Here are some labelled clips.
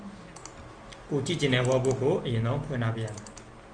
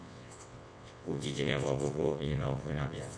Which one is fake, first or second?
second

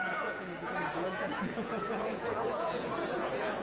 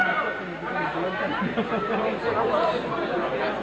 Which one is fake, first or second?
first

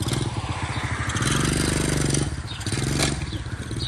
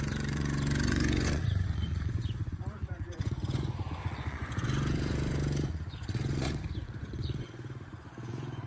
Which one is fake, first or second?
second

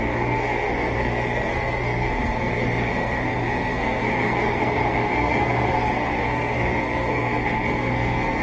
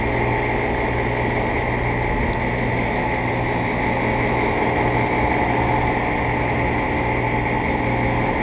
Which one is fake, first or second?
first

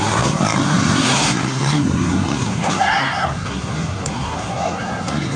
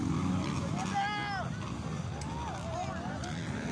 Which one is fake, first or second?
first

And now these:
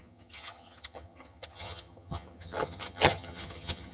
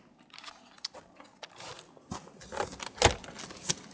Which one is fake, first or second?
first